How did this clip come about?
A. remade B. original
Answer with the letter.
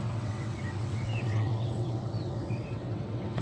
A